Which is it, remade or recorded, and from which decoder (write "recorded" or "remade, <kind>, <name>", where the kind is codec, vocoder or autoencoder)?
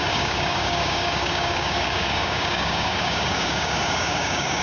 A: remade, codec, DAC